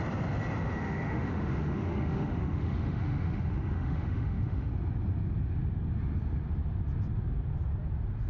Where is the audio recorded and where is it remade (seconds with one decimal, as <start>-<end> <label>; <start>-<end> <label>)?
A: 0.0-0.8 recorded; 0.8-4.7 remade; 4.7-8.3 recorded